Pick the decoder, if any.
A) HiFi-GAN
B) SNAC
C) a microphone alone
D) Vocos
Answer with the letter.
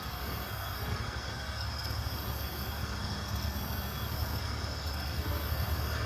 B